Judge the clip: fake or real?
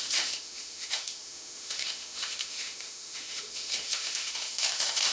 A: fake